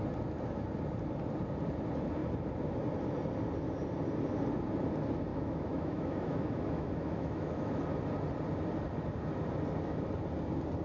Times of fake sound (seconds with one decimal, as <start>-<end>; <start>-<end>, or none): 5.3-7.8